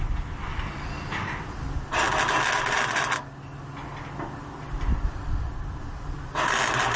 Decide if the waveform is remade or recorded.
recorded